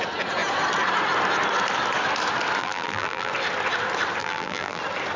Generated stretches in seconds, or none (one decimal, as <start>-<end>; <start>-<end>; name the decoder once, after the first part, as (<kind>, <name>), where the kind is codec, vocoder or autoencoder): 2.6-3.3 (vocoder, BigVGAN v2); 4.2-4.8